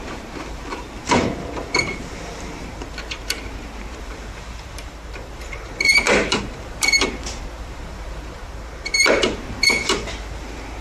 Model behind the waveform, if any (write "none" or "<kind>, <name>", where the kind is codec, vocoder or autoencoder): vocoder, BigVGAN v2